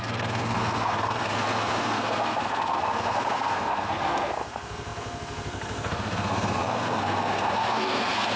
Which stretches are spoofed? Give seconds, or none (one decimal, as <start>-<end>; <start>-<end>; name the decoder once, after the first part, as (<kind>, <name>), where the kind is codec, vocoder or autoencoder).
0.0-8.4 (codec, SNAC)